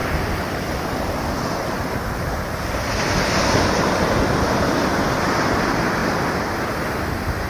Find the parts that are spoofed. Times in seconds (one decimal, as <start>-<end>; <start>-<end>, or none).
0.0-4.5